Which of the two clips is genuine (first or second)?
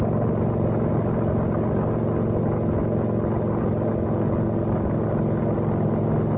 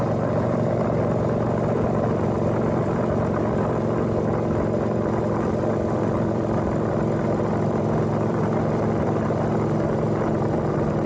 first